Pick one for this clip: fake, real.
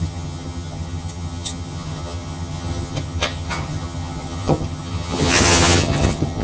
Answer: fake